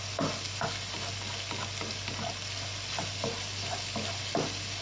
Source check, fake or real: real